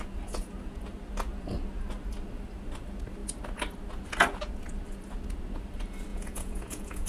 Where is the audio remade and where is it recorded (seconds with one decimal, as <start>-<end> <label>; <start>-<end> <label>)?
0.0-6.1 recorded; 6.1-7.1 remade